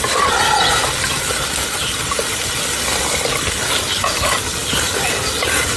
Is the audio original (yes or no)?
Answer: yes